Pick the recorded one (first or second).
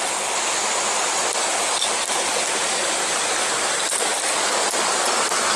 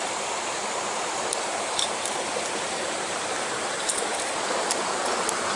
first